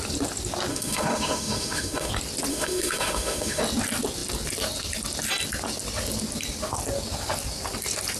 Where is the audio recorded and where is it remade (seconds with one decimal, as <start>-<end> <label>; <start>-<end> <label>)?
0.0-0.7 recorded; 0.7-2.1 remade; 2.1-2.5 recorded; 2.5-3.6 remade; 3.6-8.2 recorded